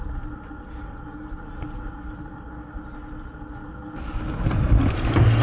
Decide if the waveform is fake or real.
real